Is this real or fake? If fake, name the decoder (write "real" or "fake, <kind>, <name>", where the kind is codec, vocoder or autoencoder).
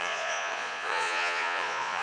fake, vocoder, Vocos